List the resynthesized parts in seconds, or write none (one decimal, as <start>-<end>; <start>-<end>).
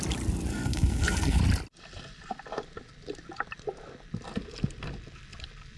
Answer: 0.5-1.4